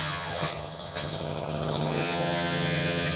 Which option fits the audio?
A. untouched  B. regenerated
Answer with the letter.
B